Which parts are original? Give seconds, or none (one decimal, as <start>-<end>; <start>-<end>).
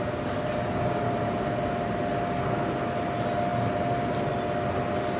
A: 0.0-5.2